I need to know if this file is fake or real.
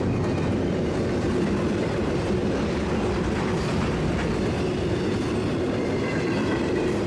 real